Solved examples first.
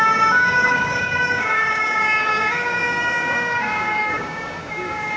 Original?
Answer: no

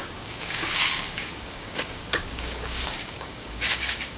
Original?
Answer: no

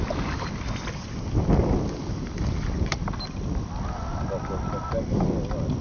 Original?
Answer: yes